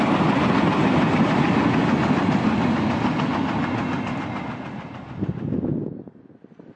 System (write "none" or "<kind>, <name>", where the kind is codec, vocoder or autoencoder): none